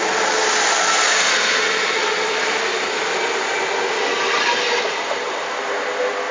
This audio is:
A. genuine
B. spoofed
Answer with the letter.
A